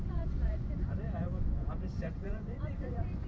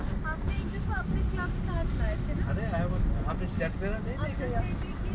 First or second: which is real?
second